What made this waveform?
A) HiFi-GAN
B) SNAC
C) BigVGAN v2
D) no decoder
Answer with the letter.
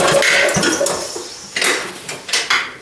D